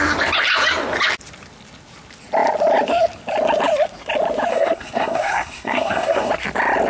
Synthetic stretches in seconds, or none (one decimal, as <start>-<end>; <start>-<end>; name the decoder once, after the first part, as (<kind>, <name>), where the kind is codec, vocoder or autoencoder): 4.5-6.3 (codec, SNAC)